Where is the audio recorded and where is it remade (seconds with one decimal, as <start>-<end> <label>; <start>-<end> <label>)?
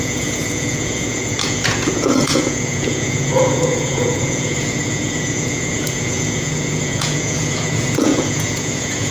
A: 0.0-9.1 remade